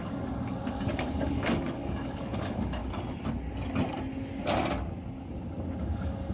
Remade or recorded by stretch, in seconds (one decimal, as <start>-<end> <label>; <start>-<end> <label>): 0.0-2.8 remade; 2.8-5.8 recorded; 5.8-6.3 remade